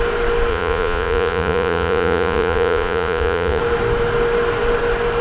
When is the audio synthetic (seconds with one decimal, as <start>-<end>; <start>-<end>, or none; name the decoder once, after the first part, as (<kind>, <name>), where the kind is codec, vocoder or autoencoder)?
0.5-3.6 (vocoder, Vocos)